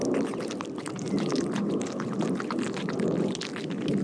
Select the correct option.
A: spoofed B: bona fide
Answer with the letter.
B